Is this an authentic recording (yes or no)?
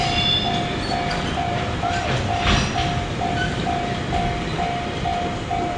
yes